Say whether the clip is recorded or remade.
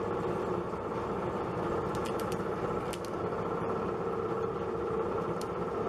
recorded